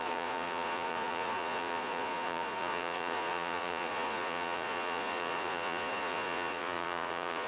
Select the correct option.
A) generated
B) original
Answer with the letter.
A